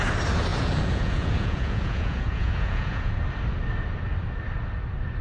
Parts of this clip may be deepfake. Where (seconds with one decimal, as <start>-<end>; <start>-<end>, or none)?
0.5-3.1